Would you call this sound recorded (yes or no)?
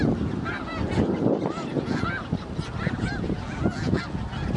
yes